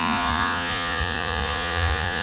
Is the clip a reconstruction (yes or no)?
yes